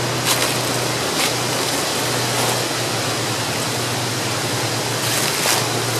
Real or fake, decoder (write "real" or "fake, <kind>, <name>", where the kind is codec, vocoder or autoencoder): real